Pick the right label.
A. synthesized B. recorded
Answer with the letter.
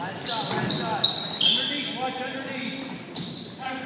B